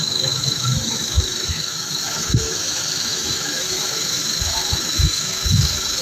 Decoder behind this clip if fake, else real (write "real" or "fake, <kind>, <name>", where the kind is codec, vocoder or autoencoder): fake, autoencoder, DAC-VAE